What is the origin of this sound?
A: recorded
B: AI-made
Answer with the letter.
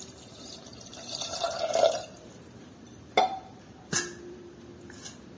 B